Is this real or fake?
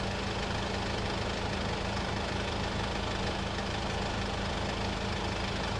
real